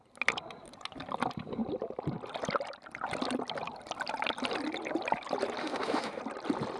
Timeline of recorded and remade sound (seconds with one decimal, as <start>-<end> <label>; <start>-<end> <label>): 0.0-5.6 recorded; 5.6-6.2 remade; 6.2-6.8 recorded